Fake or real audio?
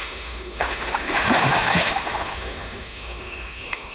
fake